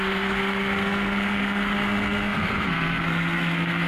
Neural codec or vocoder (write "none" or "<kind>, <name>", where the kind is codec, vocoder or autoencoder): codec, SNAC